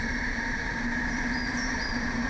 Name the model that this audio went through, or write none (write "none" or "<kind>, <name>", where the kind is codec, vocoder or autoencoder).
vocoder, BigVGAN v2